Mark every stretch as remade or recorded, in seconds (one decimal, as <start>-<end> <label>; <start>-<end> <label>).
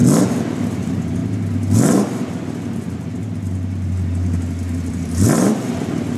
0.0-0.7 recorded; 0.7-1.2 remade; 1.2-4.9 recorded; 4.9-6.2 remade